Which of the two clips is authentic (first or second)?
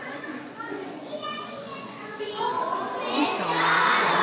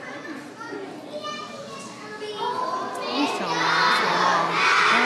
second